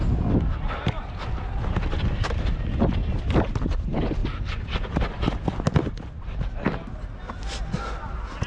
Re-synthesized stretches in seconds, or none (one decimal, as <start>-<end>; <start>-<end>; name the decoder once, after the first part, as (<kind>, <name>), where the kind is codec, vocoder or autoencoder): none

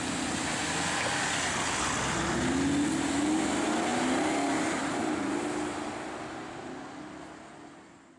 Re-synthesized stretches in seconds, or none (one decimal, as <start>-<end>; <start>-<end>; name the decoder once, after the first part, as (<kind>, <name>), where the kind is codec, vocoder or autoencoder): none